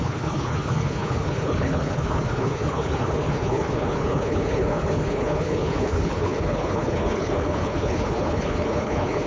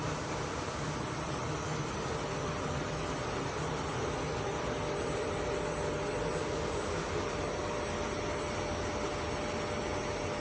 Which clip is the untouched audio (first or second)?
second